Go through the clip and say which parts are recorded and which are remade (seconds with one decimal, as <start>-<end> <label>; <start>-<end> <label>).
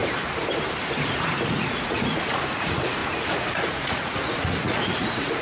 0.0-1.1 recorded; 1.1-5.4 remade